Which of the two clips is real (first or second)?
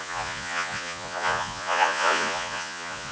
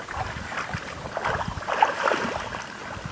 second